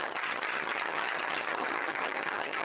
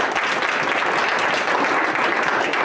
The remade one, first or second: first